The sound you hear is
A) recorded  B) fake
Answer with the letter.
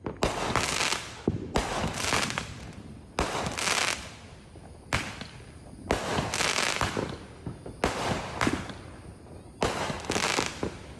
A